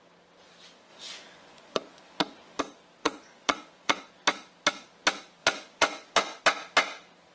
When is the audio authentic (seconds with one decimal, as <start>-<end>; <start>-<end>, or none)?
0.0-0.9; 2.6-3.0; 4.1-5.4; 6.4-7.3